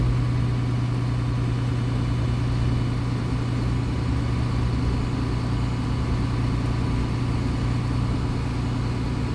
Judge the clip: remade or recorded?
recorded